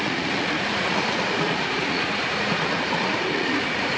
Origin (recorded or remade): remade